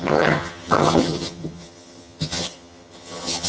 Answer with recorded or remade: remade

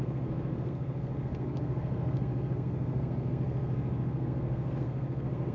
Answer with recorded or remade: remade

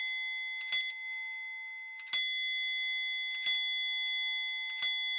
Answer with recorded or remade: recorded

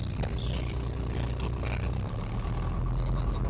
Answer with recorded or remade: recorded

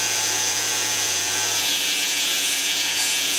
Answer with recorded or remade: remade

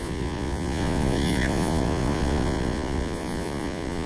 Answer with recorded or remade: remade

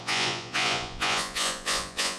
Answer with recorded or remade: remade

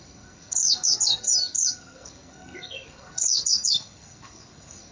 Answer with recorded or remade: remade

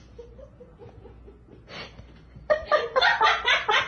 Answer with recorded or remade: recorded